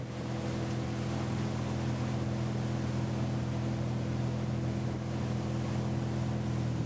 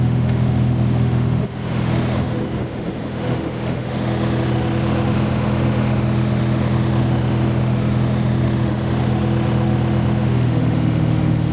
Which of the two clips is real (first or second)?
first